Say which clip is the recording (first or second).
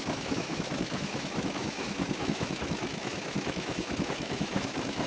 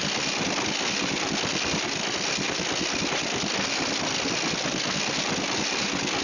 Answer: second